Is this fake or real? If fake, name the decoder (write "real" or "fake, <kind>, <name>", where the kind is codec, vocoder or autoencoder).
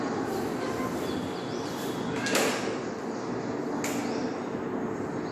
real